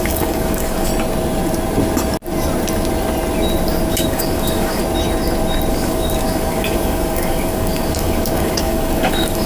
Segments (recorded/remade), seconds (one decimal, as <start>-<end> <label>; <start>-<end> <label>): 0.0-0.9 remade; 0.9-3.9 recorded; 3.9-4.8 remade; 4.8-5.7 recorded; 5.7-9.5 remade